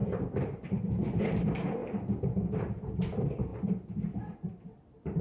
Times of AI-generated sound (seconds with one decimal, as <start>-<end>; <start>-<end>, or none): 0.0-1.2; 1.8-2.9

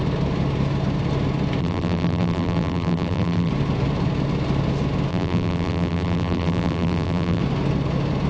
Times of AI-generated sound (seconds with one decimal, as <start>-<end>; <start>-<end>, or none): 1.6-3.5; 5.1-7.4

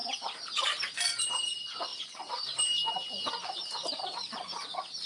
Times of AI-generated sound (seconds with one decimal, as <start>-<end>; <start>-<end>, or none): 0.6-5.1

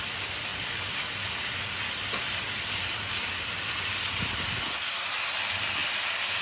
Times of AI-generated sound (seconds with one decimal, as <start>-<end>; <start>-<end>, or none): none